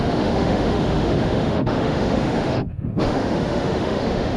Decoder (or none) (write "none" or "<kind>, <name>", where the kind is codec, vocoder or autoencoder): autoencoder, DAC-VAE